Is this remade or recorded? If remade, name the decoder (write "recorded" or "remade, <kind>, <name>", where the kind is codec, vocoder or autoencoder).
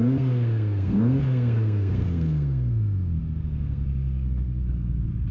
remade, codec, SNAC